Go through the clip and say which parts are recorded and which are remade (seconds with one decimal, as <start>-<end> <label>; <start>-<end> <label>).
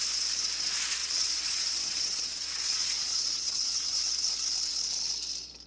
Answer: 0.0-1.0 recorded; 1.0-4.0 remade; 4.0-5.7 recorded